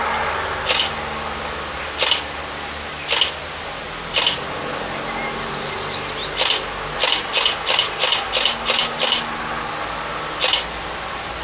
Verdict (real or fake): real